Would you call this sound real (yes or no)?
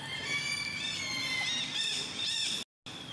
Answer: yes